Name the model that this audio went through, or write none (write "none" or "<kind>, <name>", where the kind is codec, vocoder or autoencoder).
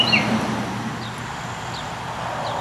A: none